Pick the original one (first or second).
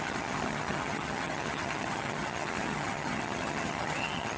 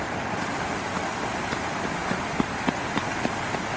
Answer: second